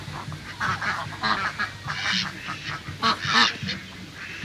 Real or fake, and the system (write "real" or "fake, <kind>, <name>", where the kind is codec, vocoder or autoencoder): real